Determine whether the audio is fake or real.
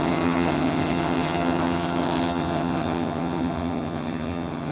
fake